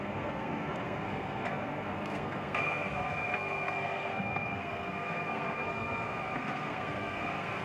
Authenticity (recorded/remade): remade